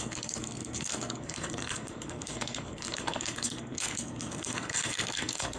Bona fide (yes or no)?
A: no